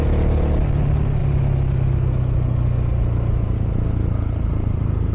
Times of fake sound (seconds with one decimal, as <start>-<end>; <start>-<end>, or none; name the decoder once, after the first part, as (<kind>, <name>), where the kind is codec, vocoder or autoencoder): none